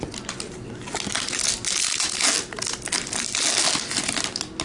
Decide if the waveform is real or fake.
real